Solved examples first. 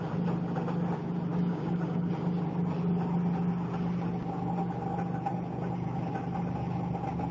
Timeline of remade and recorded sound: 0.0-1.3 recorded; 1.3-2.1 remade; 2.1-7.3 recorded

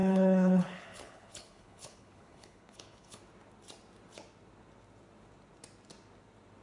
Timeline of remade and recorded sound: 0.0-3.2 remade; 3.2-6.6 recorded

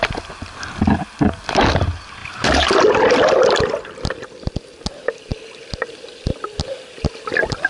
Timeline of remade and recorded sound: 0.0-7.7 recorded

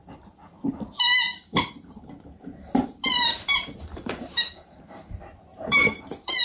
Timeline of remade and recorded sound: 0.0-1.3 recorded; 1.3-5.1 remade; 5.1-5.5 recorded; 5.5-6.4 remade